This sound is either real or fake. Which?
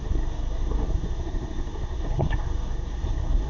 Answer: fake